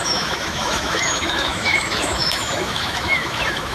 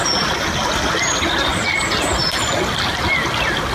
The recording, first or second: second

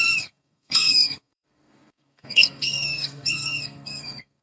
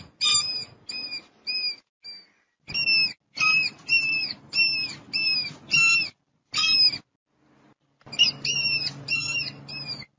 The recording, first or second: second